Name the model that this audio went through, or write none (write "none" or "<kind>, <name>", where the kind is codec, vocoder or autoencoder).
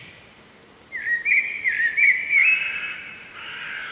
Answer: vocoder, BigVGAN v2